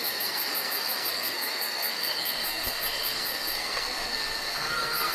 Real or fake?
fake